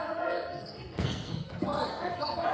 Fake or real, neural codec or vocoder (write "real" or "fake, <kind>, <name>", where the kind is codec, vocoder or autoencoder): fake, codec, SNAC